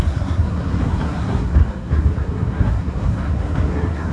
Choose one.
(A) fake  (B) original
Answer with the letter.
A